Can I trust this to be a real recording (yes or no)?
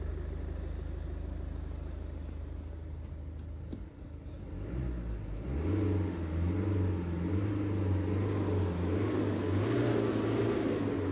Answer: yes